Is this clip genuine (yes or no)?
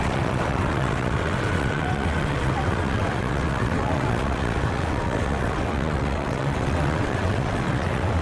no